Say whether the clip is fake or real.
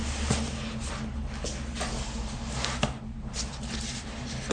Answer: real